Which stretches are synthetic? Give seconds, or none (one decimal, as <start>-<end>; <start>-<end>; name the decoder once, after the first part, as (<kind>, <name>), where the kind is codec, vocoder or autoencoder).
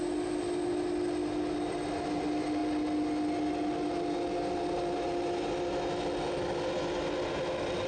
none